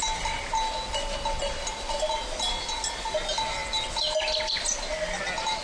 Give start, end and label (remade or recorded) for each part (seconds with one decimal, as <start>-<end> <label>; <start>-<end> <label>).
0.0-5.6 recorded